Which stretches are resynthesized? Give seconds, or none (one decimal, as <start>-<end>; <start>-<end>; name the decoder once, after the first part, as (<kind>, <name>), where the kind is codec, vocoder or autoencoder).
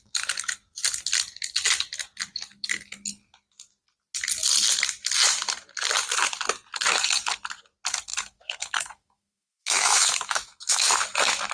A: 8.1-11.5 (autoencoder, DAC-VAE)